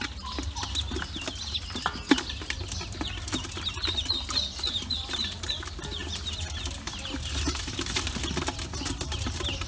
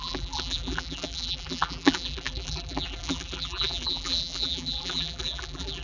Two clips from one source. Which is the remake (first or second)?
second